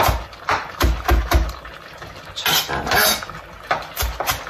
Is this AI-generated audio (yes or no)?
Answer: no